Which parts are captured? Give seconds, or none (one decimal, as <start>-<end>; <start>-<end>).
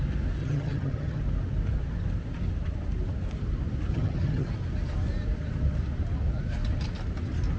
0.0-0.4; 1.2-3.9; 4.5-7.6